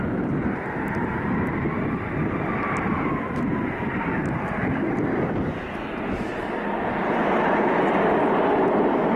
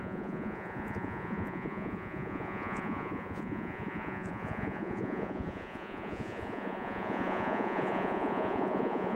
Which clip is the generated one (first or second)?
second